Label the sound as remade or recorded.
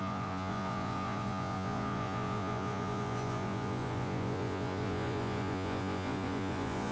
remade